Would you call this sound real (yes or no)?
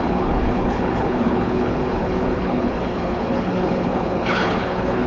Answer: no